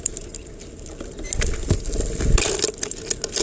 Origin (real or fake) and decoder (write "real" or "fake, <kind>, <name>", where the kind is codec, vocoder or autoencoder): real